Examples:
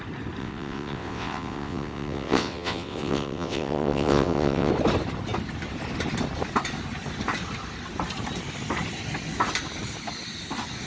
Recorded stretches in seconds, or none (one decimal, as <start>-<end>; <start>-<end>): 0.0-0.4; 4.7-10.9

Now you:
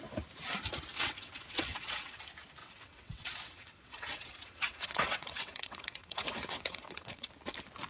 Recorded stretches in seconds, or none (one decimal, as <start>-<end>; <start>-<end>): 0.0-0.9; 2.2-2.6; 7.3-7.9

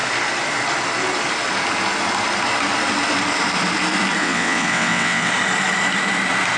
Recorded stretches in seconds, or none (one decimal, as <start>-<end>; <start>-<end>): 0.0-4.2; 5.3-6.6

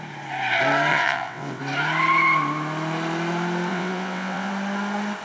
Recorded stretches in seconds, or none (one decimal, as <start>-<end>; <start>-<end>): 0.0-0.9; 1.6-3.7; 4.5-5.2

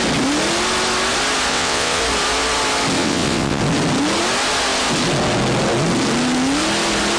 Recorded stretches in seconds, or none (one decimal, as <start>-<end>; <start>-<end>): 0.0-1.5; 2.0-3.0; 3.6-7.2

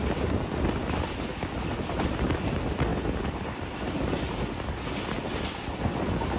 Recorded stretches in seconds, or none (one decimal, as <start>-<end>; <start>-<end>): 0.0-6.4